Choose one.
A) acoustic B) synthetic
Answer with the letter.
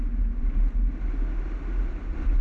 A